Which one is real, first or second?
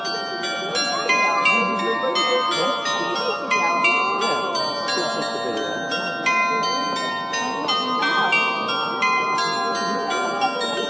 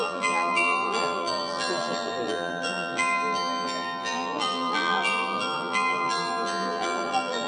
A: first